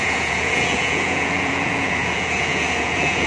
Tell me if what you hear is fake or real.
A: fake